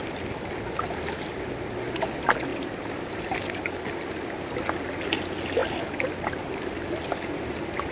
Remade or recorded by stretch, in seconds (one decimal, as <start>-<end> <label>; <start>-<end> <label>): 0.0-2.5 recorded; 2.5-3.2 remade; 3.2-7.9 recorded